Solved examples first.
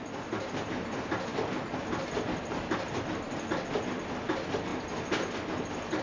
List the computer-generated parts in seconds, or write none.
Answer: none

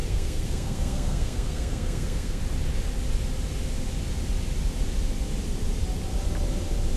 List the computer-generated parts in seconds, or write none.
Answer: 0.0-2.4

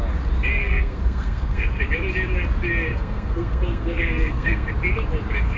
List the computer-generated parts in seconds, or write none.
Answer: 0.6-1.8; 2.9-4.7

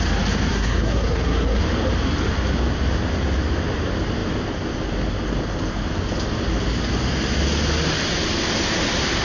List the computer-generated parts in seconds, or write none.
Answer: 0.5-1.6

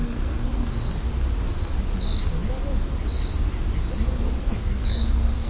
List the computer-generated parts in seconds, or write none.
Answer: 0.0-0.7; 4.4-5.5

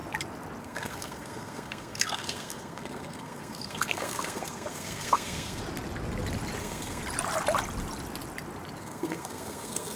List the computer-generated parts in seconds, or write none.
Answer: 0.6-5.6; 6.6-7.0; 8.8-10.0

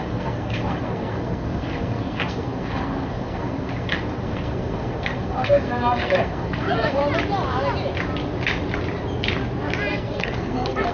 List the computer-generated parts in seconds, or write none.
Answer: 0.0-7.0; 9.9-10.9